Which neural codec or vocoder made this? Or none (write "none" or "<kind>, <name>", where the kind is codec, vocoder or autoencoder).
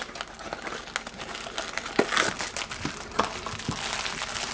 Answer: none